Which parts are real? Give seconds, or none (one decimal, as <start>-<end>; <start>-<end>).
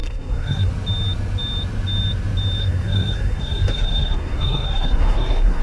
0.7-2.6